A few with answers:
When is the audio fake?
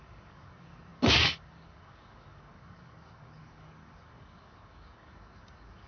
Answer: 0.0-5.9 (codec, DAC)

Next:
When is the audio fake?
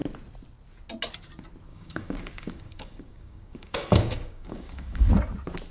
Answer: 1.7-5.1 (codec, DAC)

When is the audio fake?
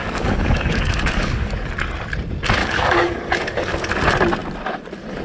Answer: 0.0-1.5 (codec, DAC); 2.6-3.9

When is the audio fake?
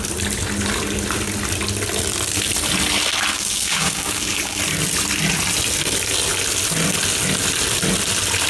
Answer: 3.3-4.6 (codec, DAC)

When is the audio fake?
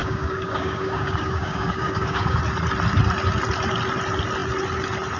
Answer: 0.0-2.4 (codec, DAC)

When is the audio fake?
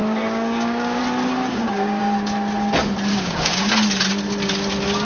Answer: 0.0-1.0 (codec, DAC); 1.5-2.0; 3.1-3.7